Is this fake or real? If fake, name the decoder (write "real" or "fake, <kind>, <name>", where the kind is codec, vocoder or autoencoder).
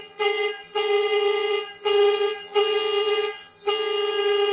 fake, vocoder, HiFi-GAN